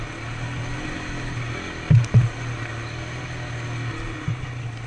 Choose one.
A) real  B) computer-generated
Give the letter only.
A